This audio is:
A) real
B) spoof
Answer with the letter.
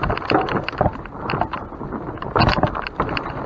A